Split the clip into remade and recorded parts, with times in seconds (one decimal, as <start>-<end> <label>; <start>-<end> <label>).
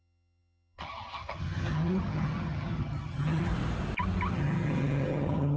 0.0-3.5 remade; 3.5-4.3 recorded; 4.3-5.6 remade